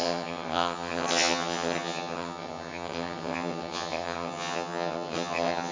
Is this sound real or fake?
fake